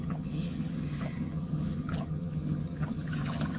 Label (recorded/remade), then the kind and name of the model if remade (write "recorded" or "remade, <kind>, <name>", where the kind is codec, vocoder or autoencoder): remade, vocoder, HiFi-GAN